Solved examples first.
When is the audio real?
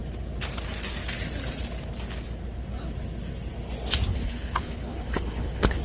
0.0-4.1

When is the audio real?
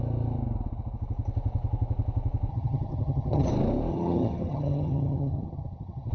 0.0-2.5; 3.5-3.9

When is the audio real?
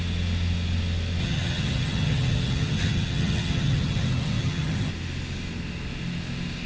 0.0-1.2; 4.9-6.7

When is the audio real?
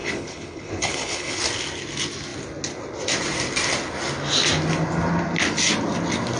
1.4-6.4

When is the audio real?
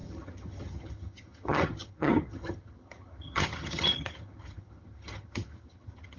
none